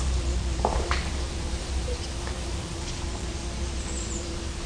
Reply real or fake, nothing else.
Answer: fake